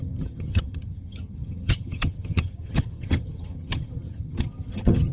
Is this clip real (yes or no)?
no